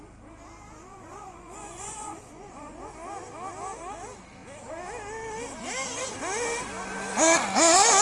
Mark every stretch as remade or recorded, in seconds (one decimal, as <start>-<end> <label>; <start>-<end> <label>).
0.0-0.9 recorded; 0.9-2.9 remade; 2.9-8.0 recorded